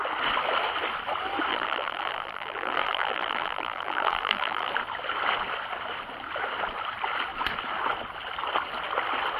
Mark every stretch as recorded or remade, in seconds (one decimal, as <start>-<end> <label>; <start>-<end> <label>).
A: 0.0-1.5 recorded; 1.5-4.7 remade; 4.7-9.4 recorded